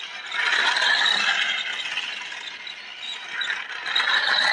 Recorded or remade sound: recorded